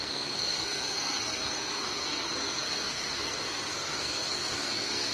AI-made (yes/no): yes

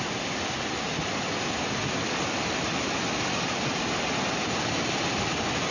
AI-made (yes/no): no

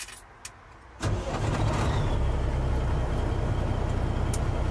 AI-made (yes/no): no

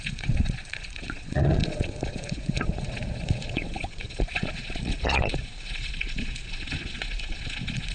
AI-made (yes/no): yes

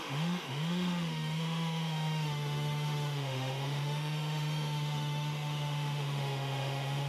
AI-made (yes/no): yes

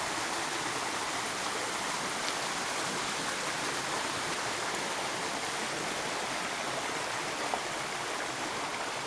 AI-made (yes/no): no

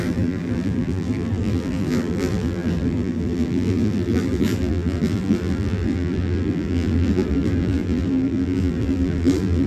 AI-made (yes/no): yes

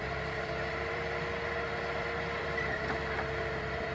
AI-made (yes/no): yes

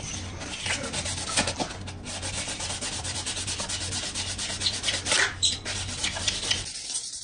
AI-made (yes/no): no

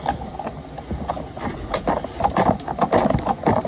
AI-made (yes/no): no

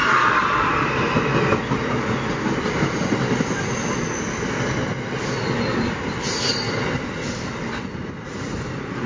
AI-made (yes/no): no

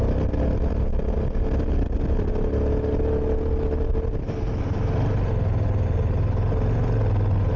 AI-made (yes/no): no